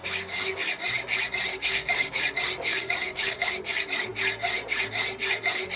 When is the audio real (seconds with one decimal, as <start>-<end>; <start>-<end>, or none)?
0.6-1.5; 2.2-2.7; 3.5-5.8

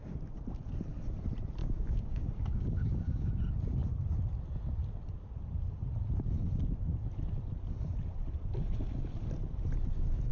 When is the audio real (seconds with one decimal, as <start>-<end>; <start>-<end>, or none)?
0.0-1.6; 3.3-10.3

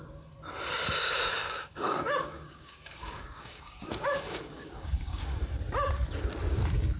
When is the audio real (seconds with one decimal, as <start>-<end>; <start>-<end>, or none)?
0.0-1.3; 5.5-7.0

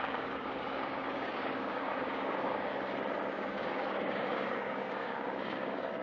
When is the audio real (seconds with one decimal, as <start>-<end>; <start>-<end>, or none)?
2.7-3.3

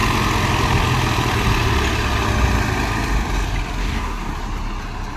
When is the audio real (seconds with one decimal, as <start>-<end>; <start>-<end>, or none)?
0.0-3.8; 4.3-5.2